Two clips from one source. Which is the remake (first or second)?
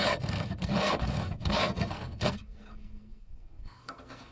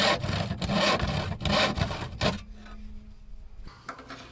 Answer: first